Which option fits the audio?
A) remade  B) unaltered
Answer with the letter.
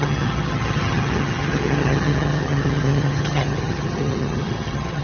A